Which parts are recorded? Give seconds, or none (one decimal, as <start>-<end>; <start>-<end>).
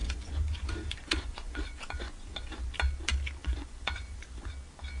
2.7-3.4; 4.5-5.0